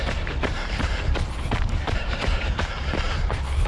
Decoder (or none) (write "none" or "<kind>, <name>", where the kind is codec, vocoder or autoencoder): vocoder, BigVGAN v2